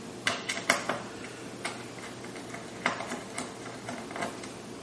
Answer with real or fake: real